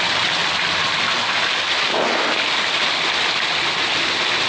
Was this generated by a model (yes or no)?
no